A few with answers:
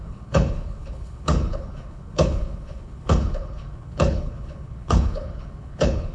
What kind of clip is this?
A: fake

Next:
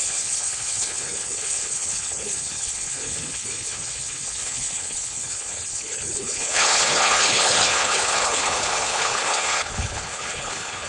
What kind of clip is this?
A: fake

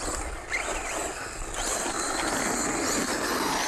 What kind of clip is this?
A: real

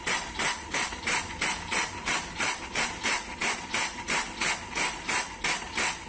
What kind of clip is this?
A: real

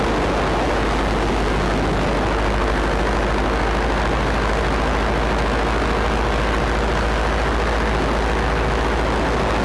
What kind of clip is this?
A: real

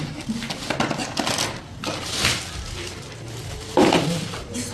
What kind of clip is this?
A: real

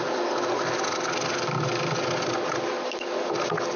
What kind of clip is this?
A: real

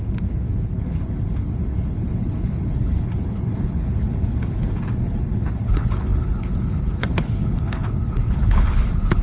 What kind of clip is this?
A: fake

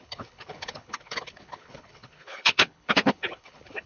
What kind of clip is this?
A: fake